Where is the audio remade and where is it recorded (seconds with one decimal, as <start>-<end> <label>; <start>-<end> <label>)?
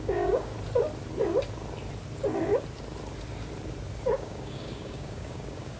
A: 0.0-0.5 remade; 0.5-4.0 recorded; 4.0-5.8 remade